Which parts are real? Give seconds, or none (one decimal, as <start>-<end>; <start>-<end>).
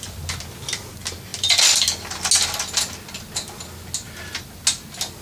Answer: 0.0-5.2